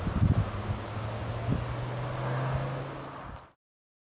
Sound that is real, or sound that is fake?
real